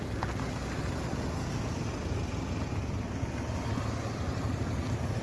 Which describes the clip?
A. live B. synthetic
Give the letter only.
A